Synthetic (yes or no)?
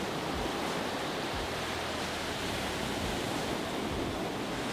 yes